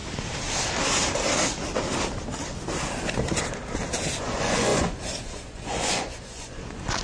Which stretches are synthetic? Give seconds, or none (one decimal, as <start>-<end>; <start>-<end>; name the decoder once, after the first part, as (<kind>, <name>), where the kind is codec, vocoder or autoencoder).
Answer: 4.2-7.0 (vocoder, Vocos)